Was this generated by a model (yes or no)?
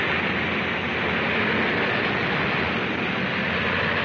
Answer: no